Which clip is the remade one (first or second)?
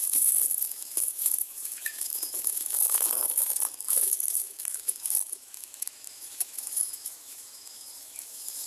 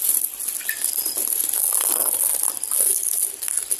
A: first